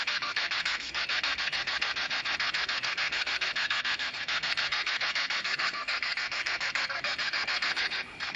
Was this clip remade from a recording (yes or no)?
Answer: yes